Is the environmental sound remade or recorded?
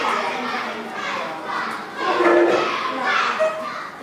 recorded